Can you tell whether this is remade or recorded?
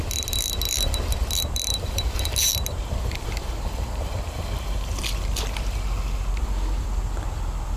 remade